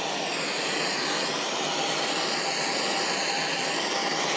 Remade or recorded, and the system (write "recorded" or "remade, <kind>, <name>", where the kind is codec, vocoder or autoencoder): recorded